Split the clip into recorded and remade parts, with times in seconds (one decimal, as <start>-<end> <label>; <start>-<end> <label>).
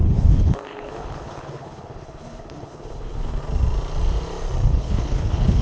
0.0-3.4 remade; 3.4-4.7 recorded; 4.7-5.6 remade